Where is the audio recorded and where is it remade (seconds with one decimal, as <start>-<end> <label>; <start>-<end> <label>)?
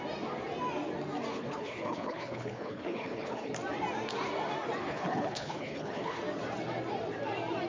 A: 0.0-1.3 recorded; 1.3-3.5 remade; 3.5-4.8 recorded; 4.8-6.2 remade; 6.2-7.7 recorded